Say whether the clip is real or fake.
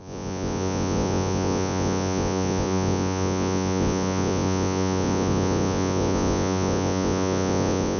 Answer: fake